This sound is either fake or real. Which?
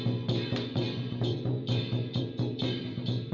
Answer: fake